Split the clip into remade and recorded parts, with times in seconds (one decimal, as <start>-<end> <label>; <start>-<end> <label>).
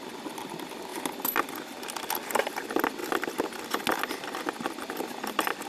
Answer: 0.0-0.9 remade; 0.9-2.0 recorded; 2.0-3.0 remade; 3.0-4.8 recorded; 4.8-5.7 remade